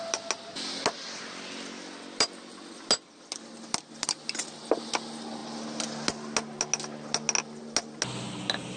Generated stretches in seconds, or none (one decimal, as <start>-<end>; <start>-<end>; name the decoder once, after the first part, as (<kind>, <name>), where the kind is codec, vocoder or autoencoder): none